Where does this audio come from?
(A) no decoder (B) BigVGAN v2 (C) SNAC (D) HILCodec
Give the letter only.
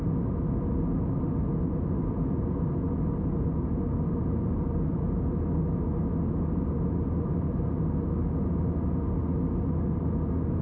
A